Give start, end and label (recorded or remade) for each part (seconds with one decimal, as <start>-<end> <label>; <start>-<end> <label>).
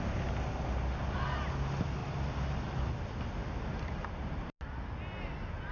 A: 0.0-2.0 recorded; 2.0-4.1 remade; 4.1-5.7 recorded